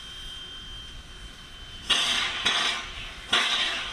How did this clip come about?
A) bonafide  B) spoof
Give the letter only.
A